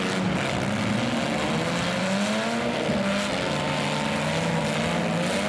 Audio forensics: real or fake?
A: real